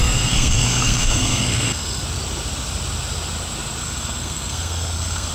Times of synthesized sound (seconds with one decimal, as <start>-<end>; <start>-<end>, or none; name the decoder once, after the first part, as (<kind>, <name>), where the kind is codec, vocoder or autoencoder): 0.0-2.0 (codec, SNAC); 3.8-5.3